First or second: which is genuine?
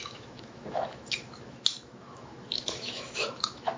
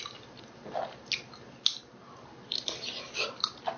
second